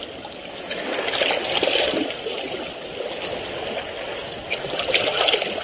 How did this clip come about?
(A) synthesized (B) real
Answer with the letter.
B